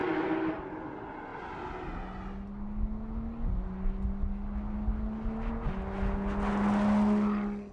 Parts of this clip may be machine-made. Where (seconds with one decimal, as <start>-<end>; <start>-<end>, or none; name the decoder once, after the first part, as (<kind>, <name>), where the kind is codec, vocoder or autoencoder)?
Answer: none